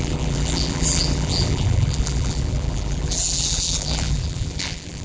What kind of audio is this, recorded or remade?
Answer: remade